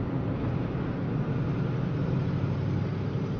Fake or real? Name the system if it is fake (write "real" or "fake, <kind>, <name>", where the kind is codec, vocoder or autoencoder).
real